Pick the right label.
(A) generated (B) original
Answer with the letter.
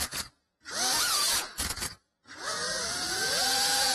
A